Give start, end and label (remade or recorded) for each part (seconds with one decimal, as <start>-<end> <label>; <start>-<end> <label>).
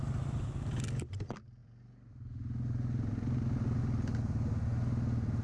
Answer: 0.0-5.4 recorded